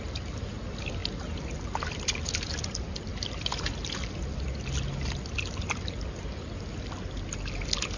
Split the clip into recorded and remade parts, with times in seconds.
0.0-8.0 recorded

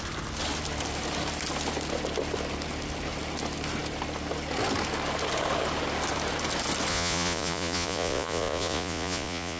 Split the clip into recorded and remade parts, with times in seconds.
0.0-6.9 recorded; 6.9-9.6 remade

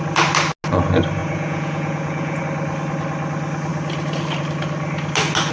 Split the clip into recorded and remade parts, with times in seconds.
0.0-1.2 recorded; 1.2-2.4 remade; 2.4-5.5 recorded

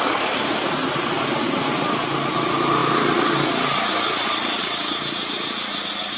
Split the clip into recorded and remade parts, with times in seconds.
0.0-6.2 recorded